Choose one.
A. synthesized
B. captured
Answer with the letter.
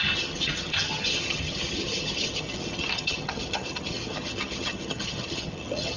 A